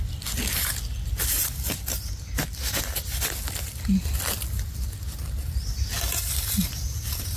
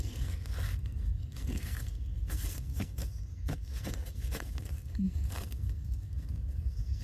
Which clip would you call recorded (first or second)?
first